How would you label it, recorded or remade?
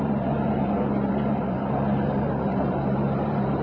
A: remade